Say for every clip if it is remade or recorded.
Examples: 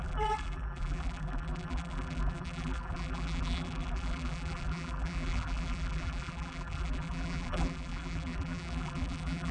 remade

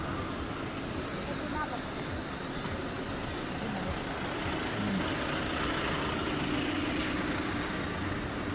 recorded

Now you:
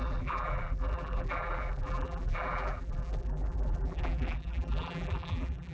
remade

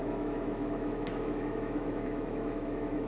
remade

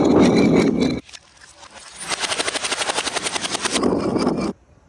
recorded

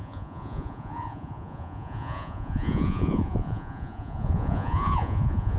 remade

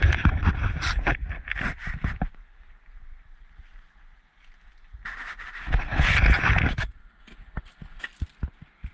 recorded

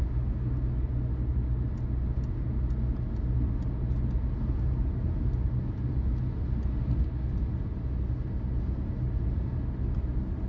recorded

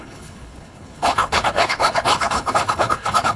remade